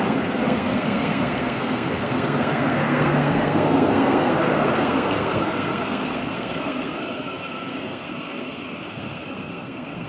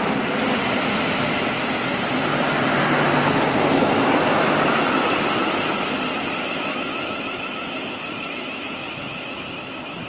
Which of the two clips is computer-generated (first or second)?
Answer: first